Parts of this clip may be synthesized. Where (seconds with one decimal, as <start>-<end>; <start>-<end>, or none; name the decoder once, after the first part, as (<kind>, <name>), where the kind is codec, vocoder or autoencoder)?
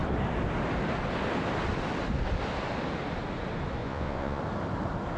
3.8-4.4 (vocoder, Vocos)